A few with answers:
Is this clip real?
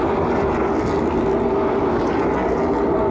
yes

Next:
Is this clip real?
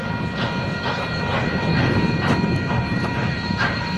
no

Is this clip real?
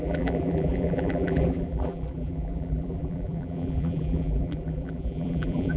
no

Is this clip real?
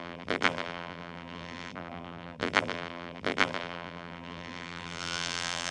no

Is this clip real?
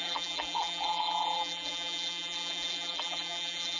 no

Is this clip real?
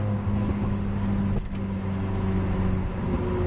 yes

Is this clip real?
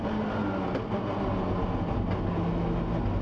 yes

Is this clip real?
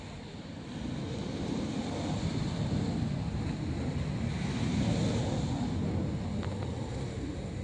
yes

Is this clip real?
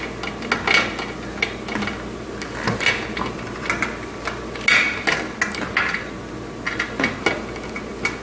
yes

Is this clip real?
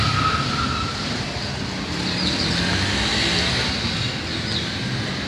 yes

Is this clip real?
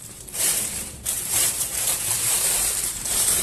no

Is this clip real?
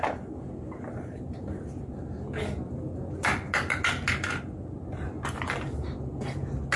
yes